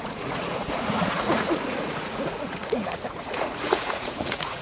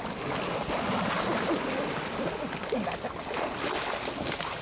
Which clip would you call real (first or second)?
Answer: second